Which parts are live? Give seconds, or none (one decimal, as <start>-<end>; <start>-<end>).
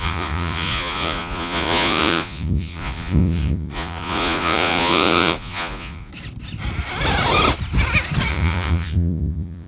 6.1-8.3